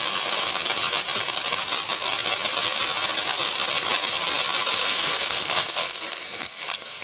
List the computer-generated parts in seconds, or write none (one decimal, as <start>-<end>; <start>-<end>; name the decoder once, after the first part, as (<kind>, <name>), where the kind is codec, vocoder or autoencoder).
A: 4.8-7.0 (codec, SNAC)